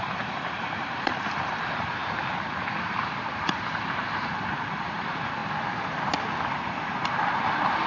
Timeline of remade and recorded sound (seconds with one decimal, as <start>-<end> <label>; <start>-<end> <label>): 0.0-2.0 remade; 2.0-3.3 recorded; 3.3-5.4 remade; 5.4-6.5 recorded; 6.5-7.9 remade